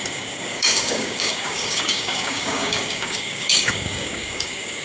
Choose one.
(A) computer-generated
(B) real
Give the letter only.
A